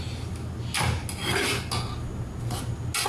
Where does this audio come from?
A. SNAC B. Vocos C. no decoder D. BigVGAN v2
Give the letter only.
C